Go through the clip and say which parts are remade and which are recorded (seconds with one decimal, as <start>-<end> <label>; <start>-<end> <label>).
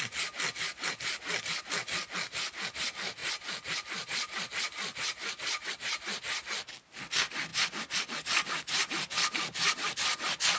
0.0-10.6 recorded